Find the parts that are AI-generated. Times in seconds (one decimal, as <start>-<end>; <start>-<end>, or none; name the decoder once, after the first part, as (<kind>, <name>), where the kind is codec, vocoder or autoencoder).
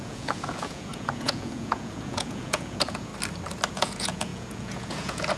0.0-3.1 (vocoder, Vocos); 3.7-5.4